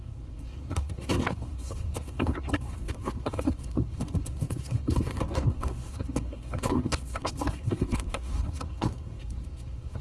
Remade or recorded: remade